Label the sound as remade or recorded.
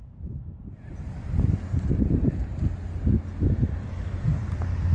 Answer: recorded